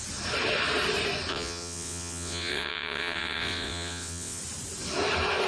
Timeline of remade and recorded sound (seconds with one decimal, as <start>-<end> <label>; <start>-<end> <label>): 0.0-1.3 recorded; 1.3-4.4 remade; 4.4-5.5 recorded